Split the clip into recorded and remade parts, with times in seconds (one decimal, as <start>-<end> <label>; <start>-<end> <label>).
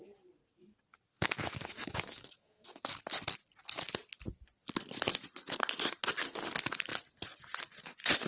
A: 0.0-1.1 recorded; 1.1-2.9 remade; 2.9-8.3 recorded